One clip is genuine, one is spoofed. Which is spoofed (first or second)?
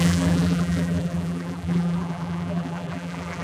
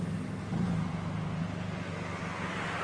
first